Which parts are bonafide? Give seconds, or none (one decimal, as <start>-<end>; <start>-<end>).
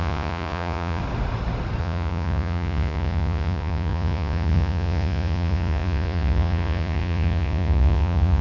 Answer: 1.0-1.8